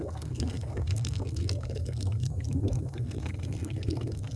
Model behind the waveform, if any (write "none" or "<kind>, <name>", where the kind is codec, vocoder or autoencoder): codec, SNAC